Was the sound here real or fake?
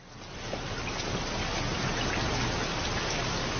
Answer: real